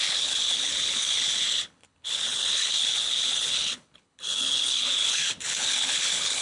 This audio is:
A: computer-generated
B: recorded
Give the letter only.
A